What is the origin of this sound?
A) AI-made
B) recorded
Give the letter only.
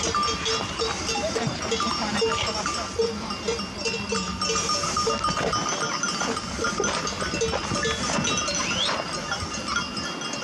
B